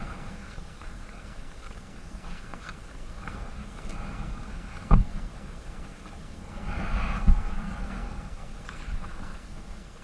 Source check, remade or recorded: remade